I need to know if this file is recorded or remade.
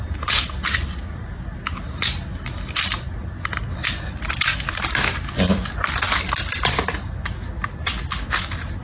recorded